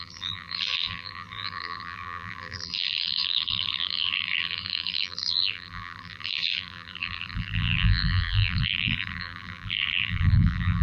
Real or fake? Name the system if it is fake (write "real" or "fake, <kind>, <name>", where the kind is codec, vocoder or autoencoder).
fake, vocoder, BigVGAN v2